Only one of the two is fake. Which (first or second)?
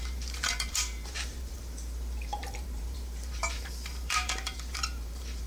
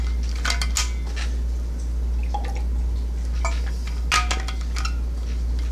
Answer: first